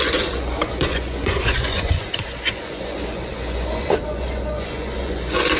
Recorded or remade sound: remade